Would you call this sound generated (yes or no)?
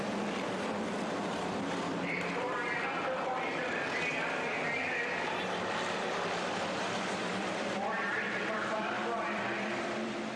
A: yes